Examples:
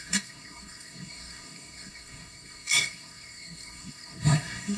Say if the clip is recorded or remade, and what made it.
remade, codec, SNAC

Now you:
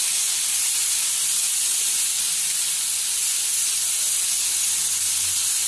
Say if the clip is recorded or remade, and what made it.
recorded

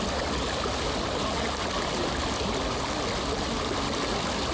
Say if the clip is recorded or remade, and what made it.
recorded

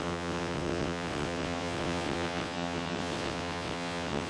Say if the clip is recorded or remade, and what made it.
remade, vocoder, WaveNeXt